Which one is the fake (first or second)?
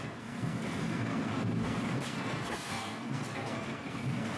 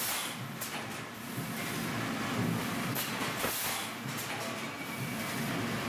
first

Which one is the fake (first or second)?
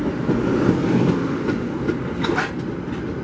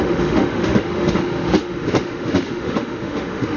second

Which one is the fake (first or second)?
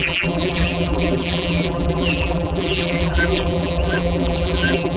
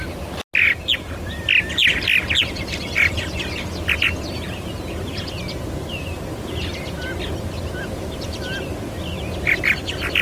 first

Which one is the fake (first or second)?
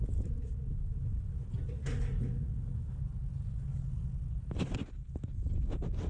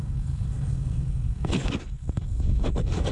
second